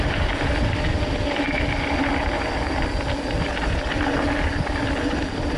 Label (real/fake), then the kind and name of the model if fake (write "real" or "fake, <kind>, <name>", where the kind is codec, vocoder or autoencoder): real